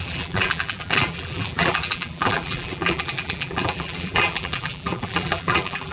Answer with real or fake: fake